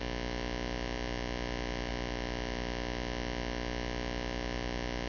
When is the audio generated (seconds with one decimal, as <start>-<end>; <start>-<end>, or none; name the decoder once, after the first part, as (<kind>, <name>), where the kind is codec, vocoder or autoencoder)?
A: none